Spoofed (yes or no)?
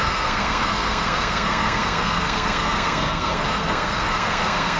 yes